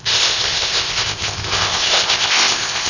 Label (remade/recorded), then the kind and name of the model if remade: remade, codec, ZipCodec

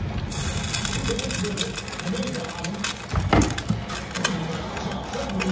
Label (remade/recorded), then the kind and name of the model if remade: recorded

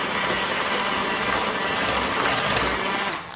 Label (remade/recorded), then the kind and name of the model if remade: recorded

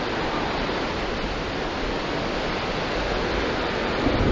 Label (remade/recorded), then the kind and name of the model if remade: recorded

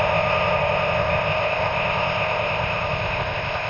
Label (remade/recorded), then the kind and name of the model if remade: remade, codec, ZipCodec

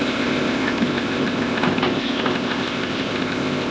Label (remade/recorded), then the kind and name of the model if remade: remade, codec, ZipCodec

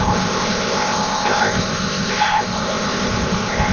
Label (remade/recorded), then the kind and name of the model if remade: remade, codec, ZipCodec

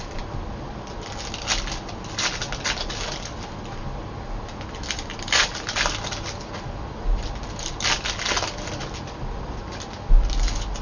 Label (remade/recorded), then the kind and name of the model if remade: recorded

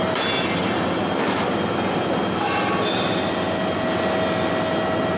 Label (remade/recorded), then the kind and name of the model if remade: recorded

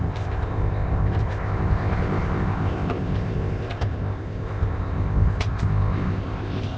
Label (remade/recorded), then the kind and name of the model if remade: remade, codec, ZipCodec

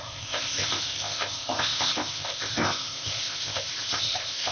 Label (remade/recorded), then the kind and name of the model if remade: remade, codec, ZipCodec